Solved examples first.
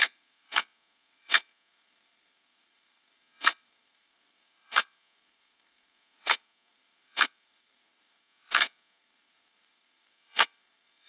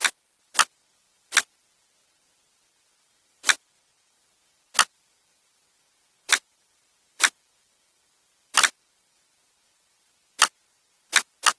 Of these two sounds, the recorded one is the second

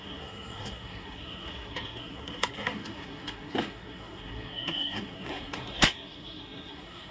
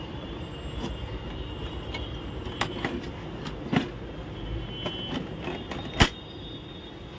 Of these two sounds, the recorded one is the second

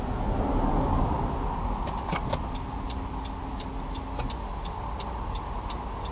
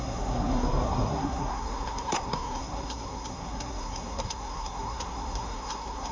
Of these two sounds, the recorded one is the first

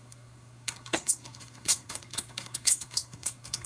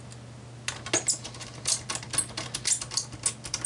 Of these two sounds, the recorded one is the second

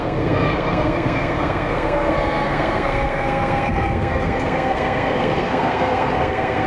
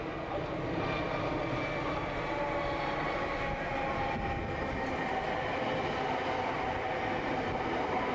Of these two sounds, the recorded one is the second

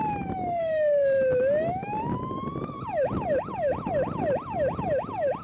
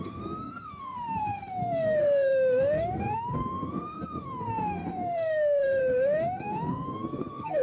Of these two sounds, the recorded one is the first